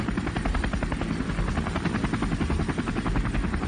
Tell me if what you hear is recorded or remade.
recorded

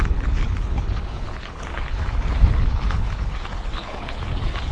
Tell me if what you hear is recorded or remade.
remade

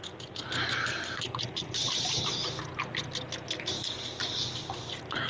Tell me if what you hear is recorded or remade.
recorded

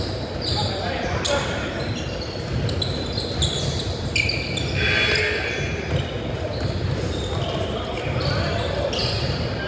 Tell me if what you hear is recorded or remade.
recorded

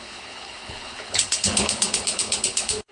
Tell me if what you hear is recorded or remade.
remade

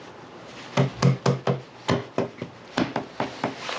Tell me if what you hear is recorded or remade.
recorded